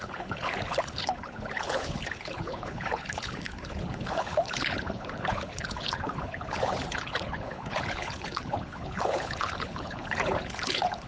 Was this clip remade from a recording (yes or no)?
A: yes